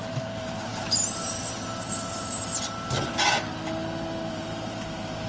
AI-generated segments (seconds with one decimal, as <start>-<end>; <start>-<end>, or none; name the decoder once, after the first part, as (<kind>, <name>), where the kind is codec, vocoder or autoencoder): 0.0-2.5 (vocoder, BigVGAN v2); 4.3-5.3